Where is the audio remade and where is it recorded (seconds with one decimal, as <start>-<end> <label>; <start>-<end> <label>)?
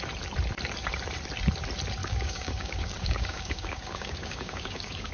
0.0-2.0 recorded; 2.0-5.1 remade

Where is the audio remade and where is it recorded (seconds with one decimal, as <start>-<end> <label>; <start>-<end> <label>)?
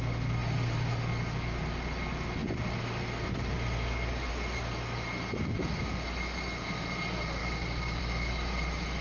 0.0-7.4 recorded; 7.4-8.0 remade; 8.0-9.0 recorded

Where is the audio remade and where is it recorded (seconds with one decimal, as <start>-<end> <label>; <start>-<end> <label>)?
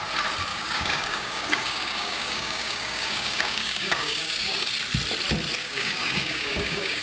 0.0-0.5 recorded; 0.5-4.7 remade; 4.7-5.6 recorded; 5.6-7.0 remade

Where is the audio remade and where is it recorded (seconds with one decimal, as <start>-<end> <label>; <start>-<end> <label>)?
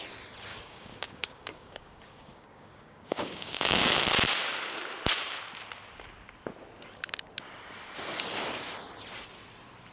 0.0-0.5 recorded; 0.5-4.0 remade; 4.0-9.9 recorded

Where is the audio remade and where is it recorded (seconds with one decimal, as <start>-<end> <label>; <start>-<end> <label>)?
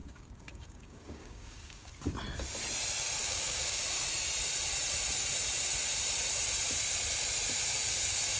0.0-1.9 remade; 1.9-3.2 recorded; 3.2-3.8 remade; 3.8-8.4 recorded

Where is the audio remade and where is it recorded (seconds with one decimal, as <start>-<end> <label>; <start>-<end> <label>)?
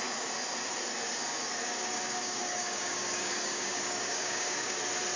0.0-1.7 recorded; 1.7-4.8 remade; 4.8-5.2 recorded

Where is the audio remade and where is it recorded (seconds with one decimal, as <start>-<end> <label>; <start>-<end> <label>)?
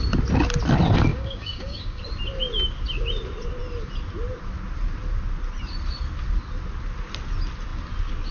0.0-1.1 recorded; 1.1-2.0 remade; 2.0-8.3 recorded